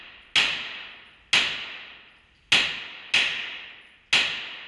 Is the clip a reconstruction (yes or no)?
no